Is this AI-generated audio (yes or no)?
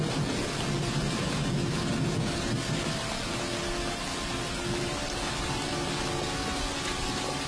no